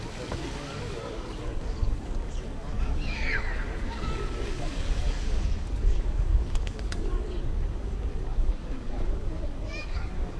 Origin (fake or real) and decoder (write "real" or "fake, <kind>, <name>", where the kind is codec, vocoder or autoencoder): fake, codec, DAC